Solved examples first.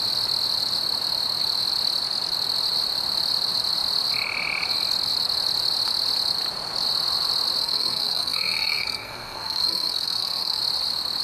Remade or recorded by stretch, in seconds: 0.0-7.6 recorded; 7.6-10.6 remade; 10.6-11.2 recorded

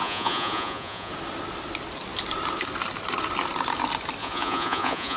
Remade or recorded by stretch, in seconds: 0.0-1.1 remade; 1.1-4.2 recorded; 4.2-5.2 remade

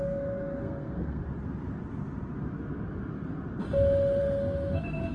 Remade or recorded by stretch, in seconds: 0.0-1.2 remade; 1.2-4.2 recorded; 4.2-5.1 remade

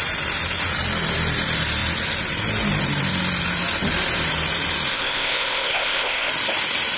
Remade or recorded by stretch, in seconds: 0.0-4.9 recorded; 4.9-6.3 remade; 6.3-7.0 recorded

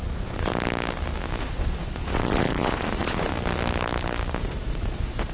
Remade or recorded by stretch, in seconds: 0.0-0.5 remade; 0.5-1.4 recorded; 1.4-3.3 remade; 3.3-4.4 recorded; 4.4-5.3 remade